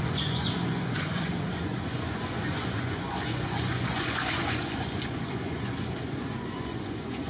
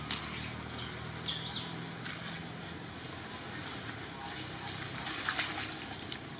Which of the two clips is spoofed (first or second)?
first